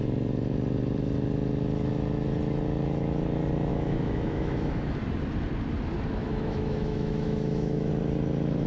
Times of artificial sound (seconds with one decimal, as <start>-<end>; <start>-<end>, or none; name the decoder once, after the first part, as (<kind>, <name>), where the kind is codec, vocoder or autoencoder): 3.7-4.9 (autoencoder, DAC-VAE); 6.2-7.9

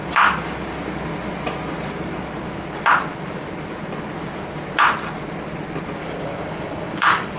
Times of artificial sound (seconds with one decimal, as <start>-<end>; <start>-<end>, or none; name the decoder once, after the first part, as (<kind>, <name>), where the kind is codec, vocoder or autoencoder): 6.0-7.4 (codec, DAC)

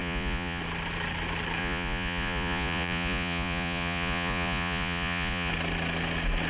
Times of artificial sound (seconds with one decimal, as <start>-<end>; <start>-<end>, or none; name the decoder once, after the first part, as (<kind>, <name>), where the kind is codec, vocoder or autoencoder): 0.0-0.6 (vocoder, Vocos); 1.6-5.5